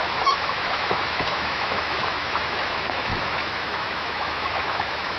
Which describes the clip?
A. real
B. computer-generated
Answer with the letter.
B